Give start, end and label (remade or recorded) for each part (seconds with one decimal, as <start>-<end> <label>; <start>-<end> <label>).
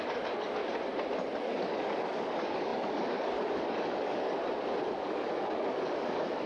0.0-0.6 remade; 0.6-1.4 recorded; 1.4-4.4 remade; 4.4-5.0 recorded; 5.0-6.5 remade